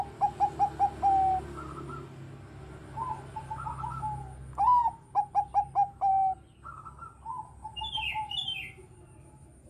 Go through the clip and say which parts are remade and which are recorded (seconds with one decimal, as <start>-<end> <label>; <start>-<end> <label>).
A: 0.0-9.7 recorded